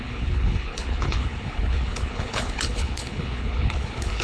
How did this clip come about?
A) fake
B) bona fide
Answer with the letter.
A